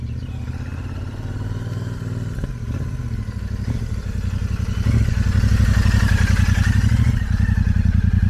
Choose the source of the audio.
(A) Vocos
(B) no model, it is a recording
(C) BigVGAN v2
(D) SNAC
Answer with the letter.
B